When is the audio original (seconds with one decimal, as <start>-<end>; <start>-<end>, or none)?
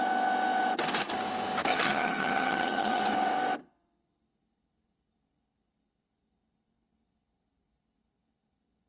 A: 0.0-1.7; 3.0-8.9